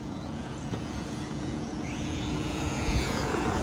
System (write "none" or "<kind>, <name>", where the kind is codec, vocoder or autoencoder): vocoder, Vocos